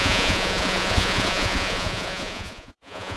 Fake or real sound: fake